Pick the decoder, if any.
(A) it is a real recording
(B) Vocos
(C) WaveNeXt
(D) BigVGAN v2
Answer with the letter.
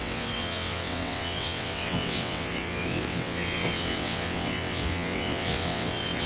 C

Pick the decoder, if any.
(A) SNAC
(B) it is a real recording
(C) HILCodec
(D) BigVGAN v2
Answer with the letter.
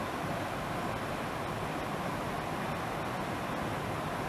B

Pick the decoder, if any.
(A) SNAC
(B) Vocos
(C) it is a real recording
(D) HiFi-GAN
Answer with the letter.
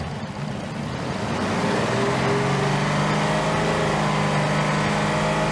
C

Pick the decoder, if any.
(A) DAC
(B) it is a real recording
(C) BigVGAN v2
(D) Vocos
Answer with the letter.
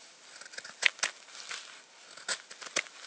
B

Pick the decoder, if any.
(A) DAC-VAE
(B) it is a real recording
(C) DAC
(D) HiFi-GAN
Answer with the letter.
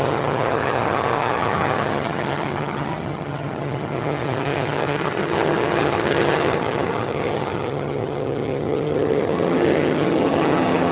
D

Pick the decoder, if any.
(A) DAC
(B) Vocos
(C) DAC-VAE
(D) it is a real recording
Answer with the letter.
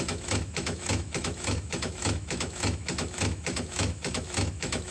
C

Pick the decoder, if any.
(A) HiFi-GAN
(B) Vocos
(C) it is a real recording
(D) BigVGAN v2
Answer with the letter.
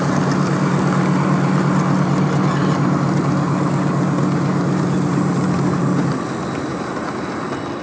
C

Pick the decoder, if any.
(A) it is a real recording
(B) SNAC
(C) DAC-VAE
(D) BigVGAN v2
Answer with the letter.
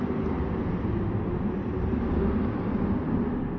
A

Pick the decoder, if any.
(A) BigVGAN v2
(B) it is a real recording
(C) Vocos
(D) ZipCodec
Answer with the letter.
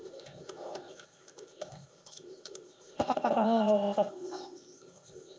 D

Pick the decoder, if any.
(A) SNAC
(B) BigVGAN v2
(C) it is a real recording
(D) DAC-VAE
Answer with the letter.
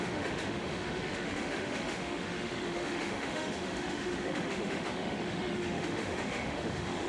D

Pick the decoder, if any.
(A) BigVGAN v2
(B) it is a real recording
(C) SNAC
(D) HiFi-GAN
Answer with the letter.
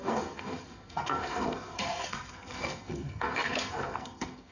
C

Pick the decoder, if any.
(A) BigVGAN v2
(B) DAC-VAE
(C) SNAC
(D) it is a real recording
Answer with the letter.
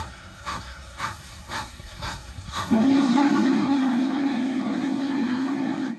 C